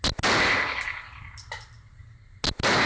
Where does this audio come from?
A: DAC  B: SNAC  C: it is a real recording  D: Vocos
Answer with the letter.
C